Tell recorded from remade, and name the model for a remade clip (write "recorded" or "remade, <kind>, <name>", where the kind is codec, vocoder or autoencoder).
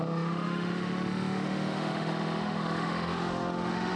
remade, autoencoder, DAC-VAE